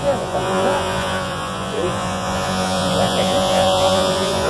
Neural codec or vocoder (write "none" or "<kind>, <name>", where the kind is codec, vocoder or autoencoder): vocoder, Vocos